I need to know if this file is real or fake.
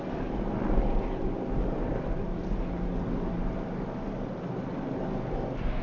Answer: real